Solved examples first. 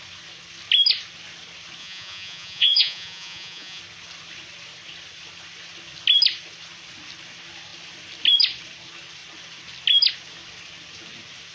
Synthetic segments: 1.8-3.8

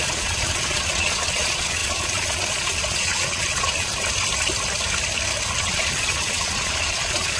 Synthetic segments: 0.0-3.9; 5.6-7.4

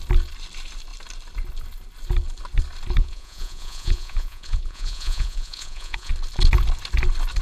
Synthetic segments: 3.0-6.1

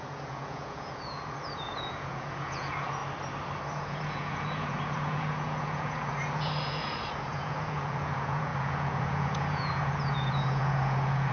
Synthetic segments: 0.0-3.0; 3.7-11.3

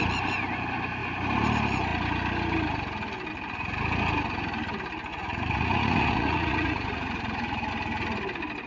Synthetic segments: 5.1-7.7

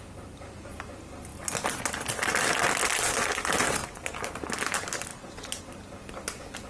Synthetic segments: none

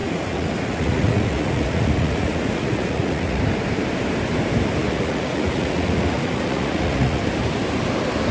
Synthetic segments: 0.0-3.4; 4.8-7.2

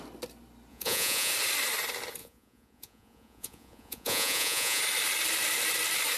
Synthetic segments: 0.7-1.3; 2.2-4.8